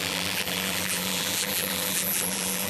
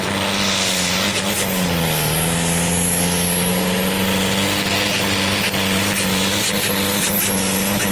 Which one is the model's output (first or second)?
first